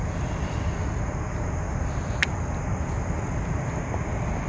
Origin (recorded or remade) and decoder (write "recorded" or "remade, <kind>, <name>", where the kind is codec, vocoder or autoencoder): recorded